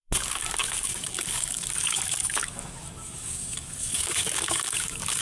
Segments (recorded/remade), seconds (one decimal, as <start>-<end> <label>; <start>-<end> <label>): 0.0-5.2 remade